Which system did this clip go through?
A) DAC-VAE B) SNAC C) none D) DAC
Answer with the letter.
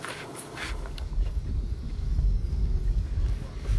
D